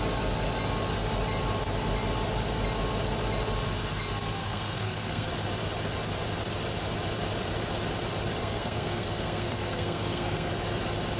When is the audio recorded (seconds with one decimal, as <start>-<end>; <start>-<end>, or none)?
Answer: 0.0-4.4; 5.3-8.4; 10.5-11.2